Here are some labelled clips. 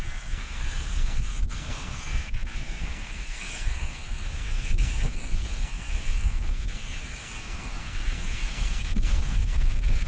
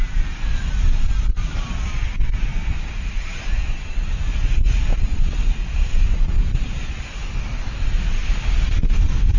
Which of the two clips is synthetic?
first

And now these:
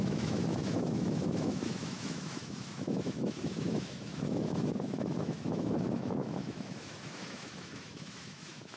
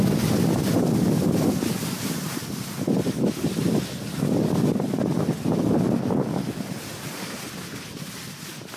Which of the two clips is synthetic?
first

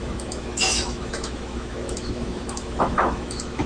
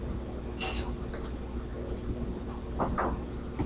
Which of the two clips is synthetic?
first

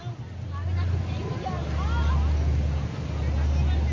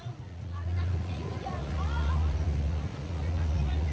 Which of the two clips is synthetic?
second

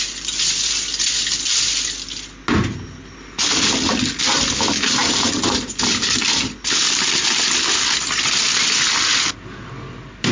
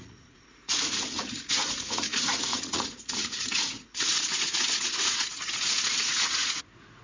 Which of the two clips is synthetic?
second